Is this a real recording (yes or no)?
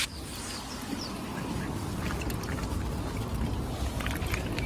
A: yes